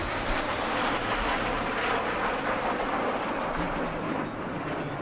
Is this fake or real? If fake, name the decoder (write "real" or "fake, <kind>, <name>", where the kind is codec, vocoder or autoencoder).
real